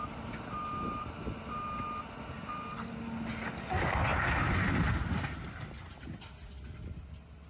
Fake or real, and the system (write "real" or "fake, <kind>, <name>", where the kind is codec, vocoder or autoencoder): real